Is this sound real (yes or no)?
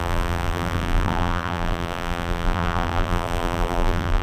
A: no